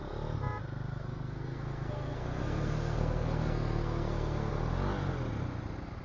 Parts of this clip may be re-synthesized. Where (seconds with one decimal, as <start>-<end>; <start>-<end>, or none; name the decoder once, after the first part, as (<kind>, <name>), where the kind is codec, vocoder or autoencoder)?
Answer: 0.9-4.5 (codec, SNAC)